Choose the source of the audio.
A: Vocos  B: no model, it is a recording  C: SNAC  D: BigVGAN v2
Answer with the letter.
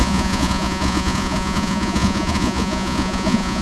A